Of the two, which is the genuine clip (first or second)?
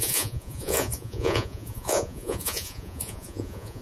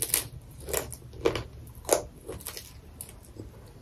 second